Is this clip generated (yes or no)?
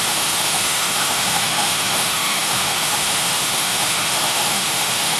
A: yes